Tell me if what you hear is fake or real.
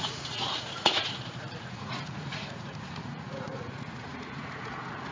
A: fake